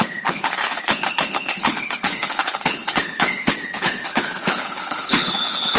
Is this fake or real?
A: fake